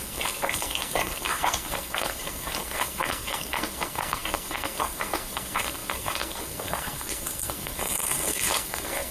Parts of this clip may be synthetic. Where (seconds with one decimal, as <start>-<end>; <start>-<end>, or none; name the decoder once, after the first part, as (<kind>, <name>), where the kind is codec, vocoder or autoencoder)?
0.0-9.1 (codec, SNAC)